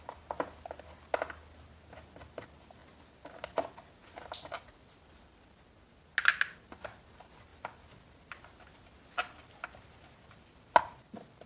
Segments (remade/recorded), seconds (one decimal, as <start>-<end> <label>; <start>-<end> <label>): 0.0-11.5 recorded